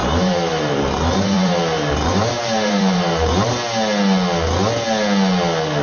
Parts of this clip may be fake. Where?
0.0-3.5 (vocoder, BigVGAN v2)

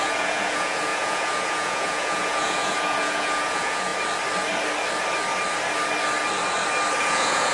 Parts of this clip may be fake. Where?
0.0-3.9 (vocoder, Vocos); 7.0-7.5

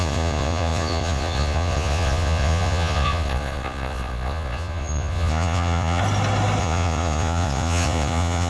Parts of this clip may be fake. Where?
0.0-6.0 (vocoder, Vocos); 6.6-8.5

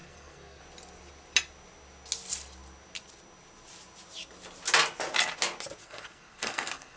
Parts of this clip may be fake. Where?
0.0-0.6 (codec, SNAC); 5.8-7.0

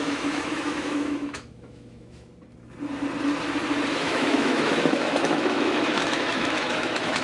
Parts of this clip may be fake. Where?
0.0-2.3 (autoencoder, DAC-VAE); 3.9-7.2

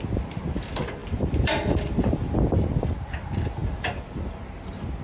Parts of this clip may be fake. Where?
1.0-2.3 (vocoder, BigVGAN v2); 3.6-4.4

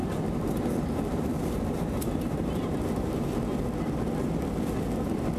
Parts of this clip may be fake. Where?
0.0-3.2 (vocoder, BigVGAN v2)